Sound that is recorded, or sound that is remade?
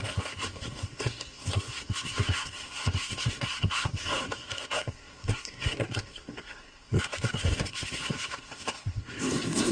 remade